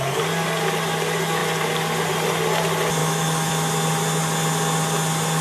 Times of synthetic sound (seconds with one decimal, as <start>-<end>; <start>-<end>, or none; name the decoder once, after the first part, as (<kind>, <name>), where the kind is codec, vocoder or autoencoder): 3.0-3.5 (autoencoder, DAC-VAE)